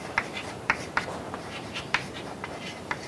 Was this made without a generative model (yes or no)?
no